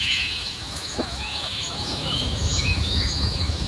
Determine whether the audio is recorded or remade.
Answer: remade